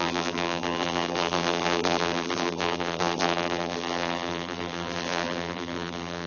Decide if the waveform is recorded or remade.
remade